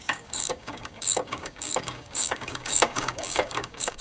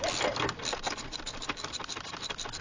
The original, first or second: second